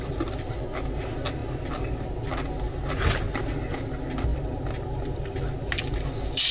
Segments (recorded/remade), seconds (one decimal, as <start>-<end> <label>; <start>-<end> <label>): 0.0-6.5 recorded